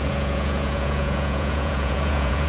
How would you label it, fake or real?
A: fake